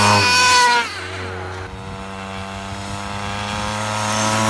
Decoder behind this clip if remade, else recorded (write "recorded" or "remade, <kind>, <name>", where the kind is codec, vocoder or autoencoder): recorded